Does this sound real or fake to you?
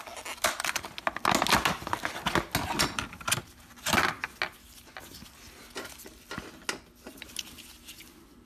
real